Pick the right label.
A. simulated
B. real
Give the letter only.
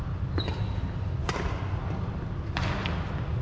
B